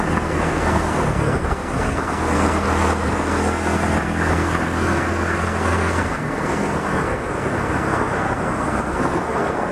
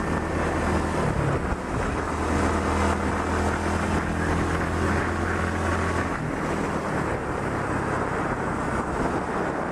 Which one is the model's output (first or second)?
first